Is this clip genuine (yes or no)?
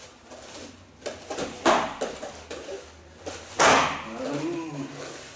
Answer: yes